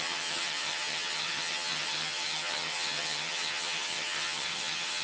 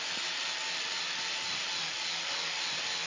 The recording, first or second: second